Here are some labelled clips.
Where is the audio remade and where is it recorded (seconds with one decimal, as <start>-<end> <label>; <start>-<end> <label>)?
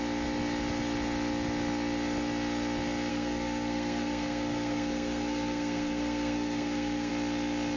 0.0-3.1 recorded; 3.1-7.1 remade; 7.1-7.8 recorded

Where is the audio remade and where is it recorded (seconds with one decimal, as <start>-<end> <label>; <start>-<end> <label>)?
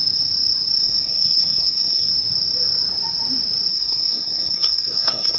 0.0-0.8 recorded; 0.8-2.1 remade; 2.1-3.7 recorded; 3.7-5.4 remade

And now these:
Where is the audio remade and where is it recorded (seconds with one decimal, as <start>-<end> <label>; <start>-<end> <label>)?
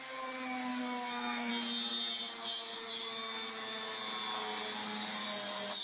0.0-0.8 recorded; 0.8-1.5 remade; 1.5-5.8 recorded